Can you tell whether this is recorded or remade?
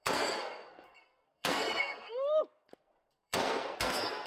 remade